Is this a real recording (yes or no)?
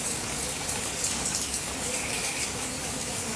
no